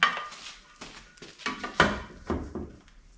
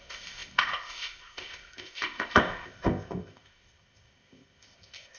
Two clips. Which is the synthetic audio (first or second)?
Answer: second